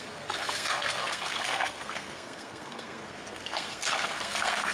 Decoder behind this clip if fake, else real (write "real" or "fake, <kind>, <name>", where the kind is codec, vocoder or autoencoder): fake, codec, SNAC